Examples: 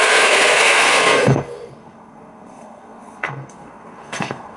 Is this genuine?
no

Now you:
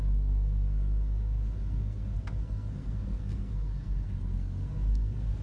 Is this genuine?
no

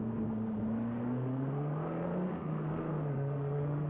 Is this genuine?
no